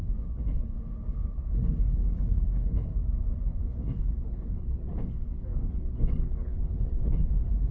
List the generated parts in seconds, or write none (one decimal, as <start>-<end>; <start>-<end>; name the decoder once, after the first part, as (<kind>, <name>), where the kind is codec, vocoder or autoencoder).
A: 0.0-7.7 (codec, HILCodec)